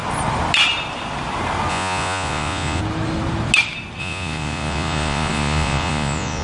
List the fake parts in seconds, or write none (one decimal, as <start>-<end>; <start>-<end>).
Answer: 1.7-2.8; 4.0-6.4